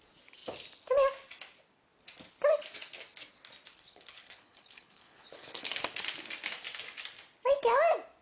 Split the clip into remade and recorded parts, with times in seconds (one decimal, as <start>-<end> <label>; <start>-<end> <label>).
0.0-3.7 recorded; 3.7-5.8 remade; 5.8-8.2 recorded